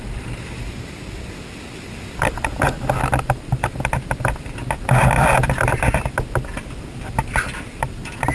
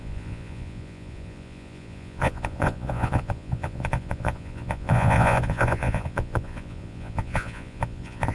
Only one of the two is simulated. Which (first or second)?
second